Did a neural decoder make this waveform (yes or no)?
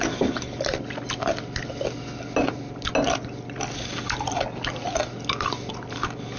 no